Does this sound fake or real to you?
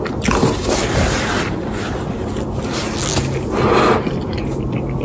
real